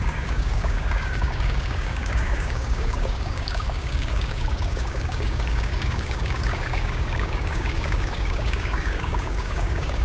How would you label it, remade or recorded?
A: remade